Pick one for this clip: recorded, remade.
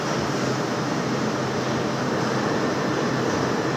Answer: recorded